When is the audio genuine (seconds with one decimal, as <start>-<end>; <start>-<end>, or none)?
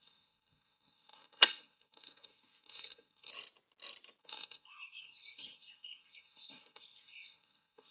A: 3.3-4.2